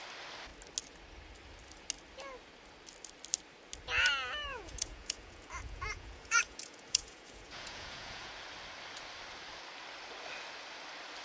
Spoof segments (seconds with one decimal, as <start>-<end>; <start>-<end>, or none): 4.5-8.3